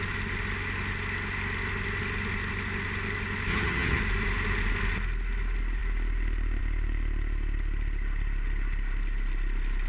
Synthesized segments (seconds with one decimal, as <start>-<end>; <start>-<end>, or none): 3.5-4.0